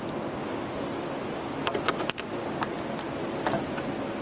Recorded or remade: recorded